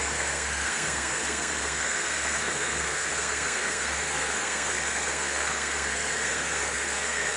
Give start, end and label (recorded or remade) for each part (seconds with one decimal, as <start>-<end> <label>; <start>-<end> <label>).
0.0-7.4 remade